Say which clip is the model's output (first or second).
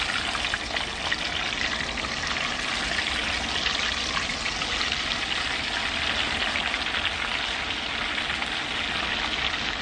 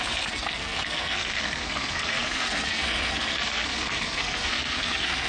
second